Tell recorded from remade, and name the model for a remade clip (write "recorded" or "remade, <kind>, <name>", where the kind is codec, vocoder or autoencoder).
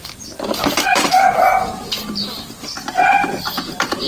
recorded